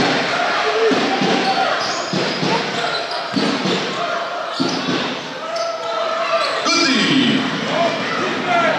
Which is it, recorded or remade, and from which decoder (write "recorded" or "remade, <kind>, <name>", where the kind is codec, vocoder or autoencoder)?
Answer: recorded